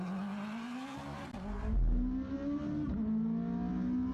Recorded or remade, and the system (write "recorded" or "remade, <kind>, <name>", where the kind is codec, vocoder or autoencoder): recorded